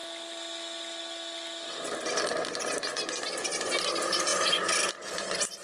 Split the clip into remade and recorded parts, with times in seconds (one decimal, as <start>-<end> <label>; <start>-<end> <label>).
0.0-5.6 recorded